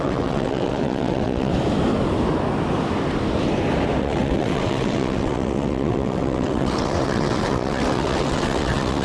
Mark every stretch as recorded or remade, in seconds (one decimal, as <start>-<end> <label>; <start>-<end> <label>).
0.0-1.5 remade; 1.5-4.0 recorded; 4.0-9.0 remade